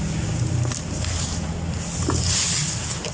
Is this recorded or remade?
recorded